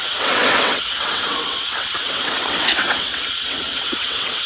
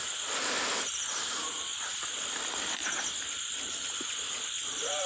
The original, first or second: second